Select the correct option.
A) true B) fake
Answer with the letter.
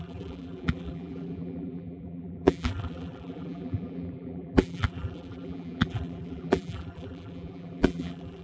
B